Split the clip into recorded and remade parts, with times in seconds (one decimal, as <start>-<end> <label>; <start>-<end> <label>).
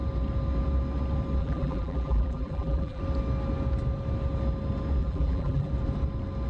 0.0-1.4 recorded; 1.4-3.0 remade; 3.0-5.0 recorded; 5.0-5.7 remade; 5.7-6.5 recorded